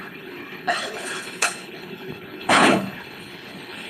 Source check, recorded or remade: remade